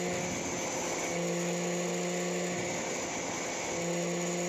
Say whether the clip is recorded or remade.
recorded